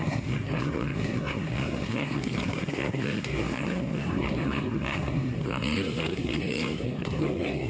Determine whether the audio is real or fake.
fake